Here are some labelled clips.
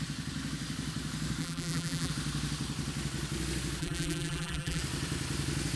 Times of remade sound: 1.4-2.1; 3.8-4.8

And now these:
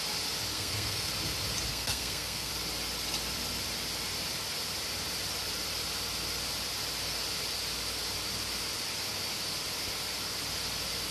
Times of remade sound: 0.5-1.1; 1.7-2.5

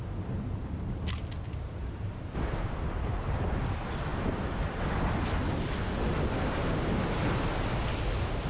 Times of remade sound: 1.8-2.3; 4.1-4.8

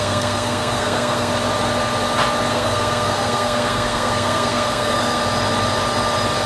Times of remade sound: 0.0-1.3; 2.5-5.2

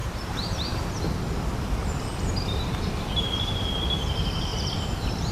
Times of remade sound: 0.0-0.8; 2.1-3.4; 4.5-5.3

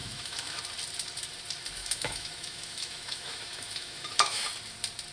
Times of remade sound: 0.0-0.6; 1.8-4.4

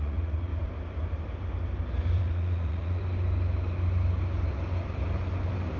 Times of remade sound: 0.0-0.5; 2.2-3.0

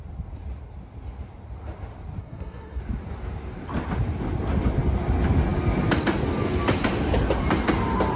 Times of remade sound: 2.2-2.8